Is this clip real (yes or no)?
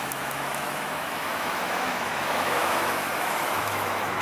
no